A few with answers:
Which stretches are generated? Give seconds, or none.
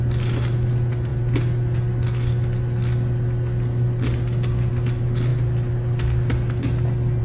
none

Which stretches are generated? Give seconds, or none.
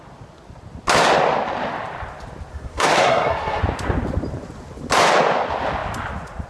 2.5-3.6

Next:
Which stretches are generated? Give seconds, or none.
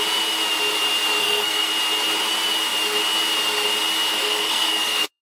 1.2-1.7; 4.2-5.2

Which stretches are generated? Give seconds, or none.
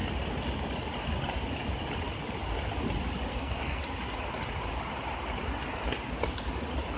3.3-3.8